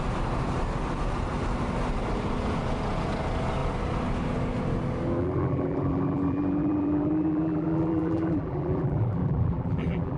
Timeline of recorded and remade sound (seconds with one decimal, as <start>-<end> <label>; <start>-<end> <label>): 0.0-5.2 recorded; 5.2-10.2 remade